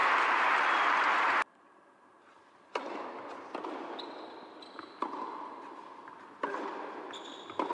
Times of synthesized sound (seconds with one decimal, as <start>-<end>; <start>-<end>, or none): 0.0-1.8